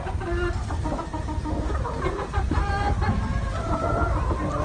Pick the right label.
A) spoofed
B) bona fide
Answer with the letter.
B